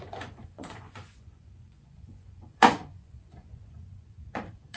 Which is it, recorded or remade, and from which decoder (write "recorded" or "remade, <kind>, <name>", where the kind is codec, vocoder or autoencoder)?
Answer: remade, vocoder, Vocos